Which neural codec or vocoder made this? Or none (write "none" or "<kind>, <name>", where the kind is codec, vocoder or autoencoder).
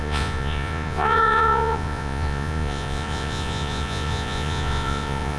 vocoder, Vocos